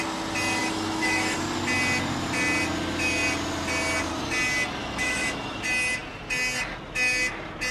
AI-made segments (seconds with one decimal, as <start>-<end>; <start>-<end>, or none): 0.6-1.4; 4.8-5.6